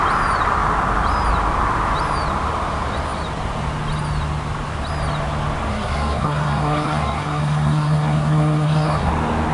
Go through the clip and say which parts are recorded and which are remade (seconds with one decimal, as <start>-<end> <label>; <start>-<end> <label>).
0.0-5.7 recorded; 5.7-9.1 remade; 9.1-9.5 recorded